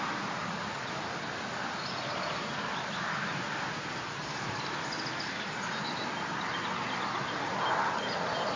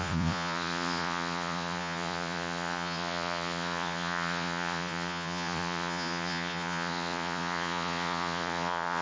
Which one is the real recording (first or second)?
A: first